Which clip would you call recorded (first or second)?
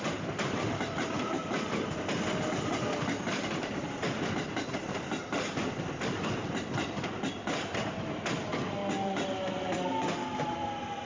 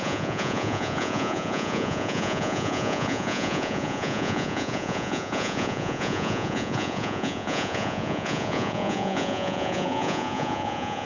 first